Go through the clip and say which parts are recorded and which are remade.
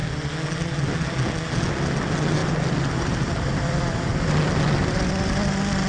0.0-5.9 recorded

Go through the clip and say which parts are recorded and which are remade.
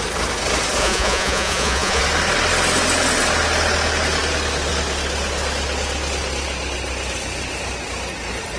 0.0-0.8 recorded; 0.8-2.0 remade; 2.0-8.6 recorded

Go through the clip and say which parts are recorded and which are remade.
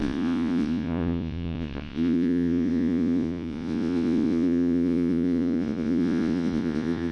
0.0-7.1 remade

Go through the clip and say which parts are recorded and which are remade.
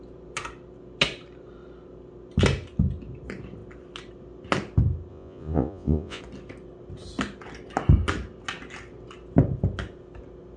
0.0-5.1 recorded; 5.1-6.2 remade; 6.2-10.6 recorded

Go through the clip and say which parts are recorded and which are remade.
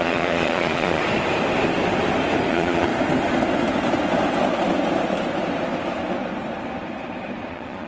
0.0-1.0 remade; 1.0-2.5 recorded; 2.5-2.9 remade; 2.9-7.5 recorded; 7.5-7.9 remade